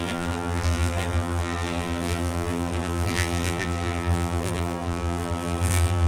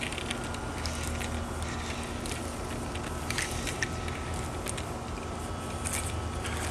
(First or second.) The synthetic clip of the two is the first